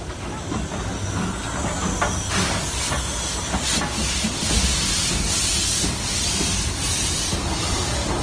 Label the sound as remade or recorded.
recorded